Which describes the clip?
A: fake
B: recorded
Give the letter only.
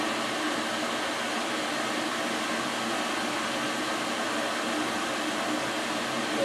B